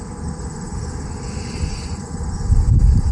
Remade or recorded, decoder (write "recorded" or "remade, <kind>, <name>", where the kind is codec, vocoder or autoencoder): recorded